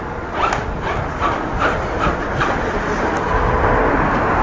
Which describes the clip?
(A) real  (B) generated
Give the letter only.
A